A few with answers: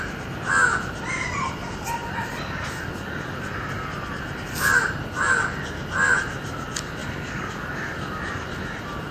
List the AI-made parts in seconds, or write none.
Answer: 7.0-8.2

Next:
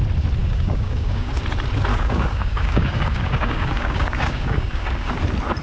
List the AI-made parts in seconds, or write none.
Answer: 0.4-1.4; 1.9-5.1

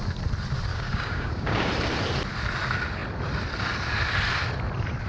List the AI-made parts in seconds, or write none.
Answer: 0.7-1.7

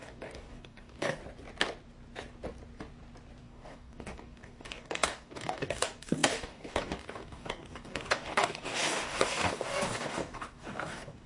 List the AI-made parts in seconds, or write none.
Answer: 0.0-1.2; 3.4-11.3

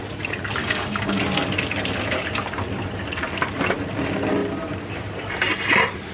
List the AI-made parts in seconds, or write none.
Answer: 0.6-1.2

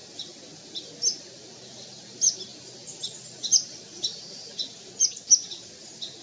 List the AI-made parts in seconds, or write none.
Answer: none

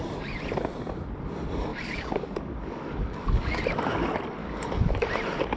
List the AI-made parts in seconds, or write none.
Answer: 1.7-3.6; 4.4-5.1